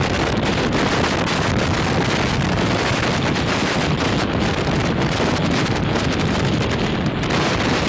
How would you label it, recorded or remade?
recorded